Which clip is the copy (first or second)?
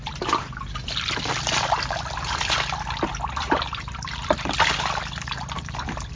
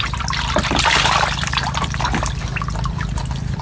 first